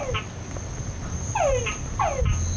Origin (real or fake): real